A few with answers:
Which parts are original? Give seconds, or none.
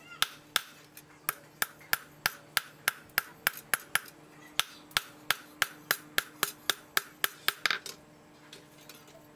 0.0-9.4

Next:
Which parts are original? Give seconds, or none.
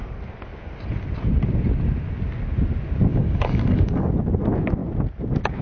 0.0-3.1; 4.1-5.6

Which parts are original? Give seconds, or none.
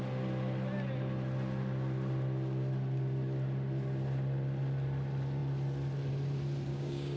0.0-6.7